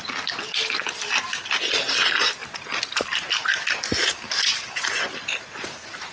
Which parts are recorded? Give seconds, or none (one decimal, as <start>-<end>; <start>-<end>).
0.0-6.1